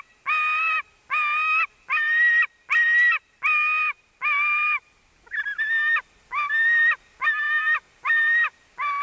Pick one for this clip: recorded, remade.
recorded